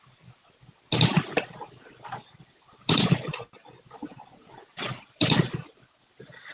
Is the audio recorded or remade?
recorded